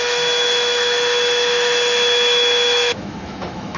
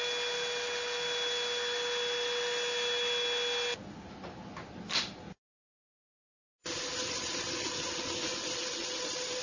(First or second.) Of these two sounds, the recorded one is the second